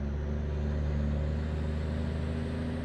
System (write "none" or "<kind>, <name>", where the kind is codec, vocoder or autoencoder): none